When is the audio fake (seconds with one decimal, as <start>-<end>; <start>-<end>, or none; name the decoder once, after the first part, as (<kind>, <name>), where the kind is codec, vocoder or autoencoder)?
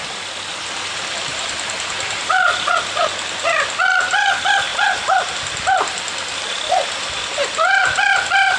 1.3-2.8 (vocoder, BigVGAN v2)